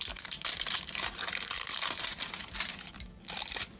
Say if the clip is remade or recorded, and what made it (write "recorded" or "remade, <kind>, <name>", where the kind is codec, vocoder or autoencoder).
recorded